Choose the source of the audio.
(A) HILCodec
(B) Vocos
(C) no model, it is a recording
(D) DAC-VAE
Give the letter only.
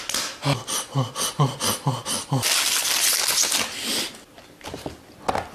C